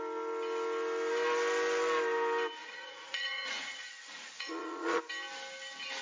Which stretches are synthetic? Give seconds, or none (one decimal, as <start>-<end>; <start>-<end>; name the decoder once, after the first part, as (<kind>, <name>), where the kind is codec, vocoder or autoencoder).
2.6-5.0 (vocoder, Vocos)